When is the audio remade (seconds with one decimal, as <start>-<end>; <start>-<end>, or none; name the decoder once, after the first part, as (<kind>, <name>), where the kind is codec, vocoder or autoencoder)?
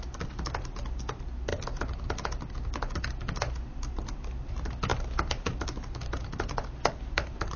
none